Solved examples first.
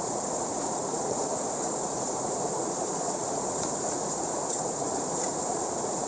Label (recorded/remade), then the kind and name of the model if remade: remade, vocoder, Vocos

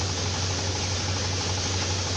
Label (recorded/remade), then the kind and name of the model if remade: recorded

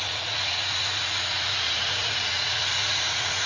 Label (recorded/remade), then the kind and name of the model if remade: remade, vocoder, Vocos